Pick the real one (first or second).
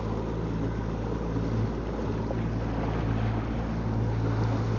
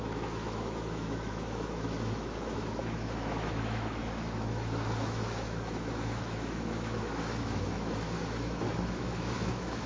first